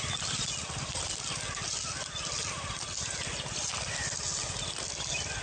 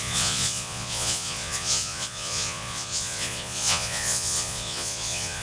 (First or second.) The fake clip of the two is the second